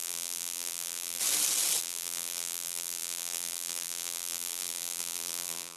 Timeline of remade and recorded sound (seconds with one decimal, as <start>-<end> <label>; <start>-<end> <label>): 0.0-1.2 remade; 1.2-1.8 recorded; 1.8-5.8 remade

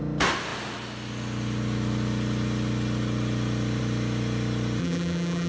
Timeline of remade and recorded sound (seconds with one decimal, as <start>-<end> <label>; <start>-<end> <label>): 0.0-4.8 recorded; 4.8-5.5 remade

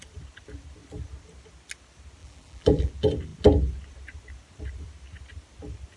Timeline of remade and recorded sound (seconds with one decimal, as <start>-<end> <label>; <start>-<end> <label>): 0.0-2.2 recorded; 2.2-2.9 remade; 2.9-6.0 recorded

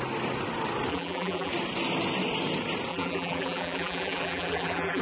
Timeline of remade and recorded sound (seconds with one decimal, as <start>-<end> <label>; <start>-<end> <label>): 0.0-0.9 recorded; 0.9-1.5 remade; 1.5-2.9 recorded; 2.9-5.0 remade

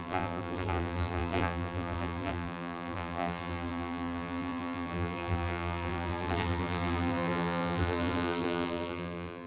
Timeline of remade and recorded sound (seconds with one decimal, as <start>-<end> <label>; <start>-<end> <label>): 0.0-9.5 remade

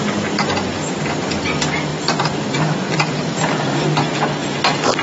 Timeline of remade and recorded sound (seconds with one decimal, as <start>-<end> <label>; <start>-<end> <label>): 0.0-1.9 recorded; 1.9-3.3 remade; 3.3-5.0 recorded